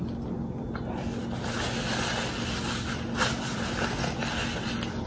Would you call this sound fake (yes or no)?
no